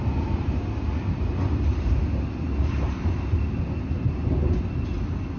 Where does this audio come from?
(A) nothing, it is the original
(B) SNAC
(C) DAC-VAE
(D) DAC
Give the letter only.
A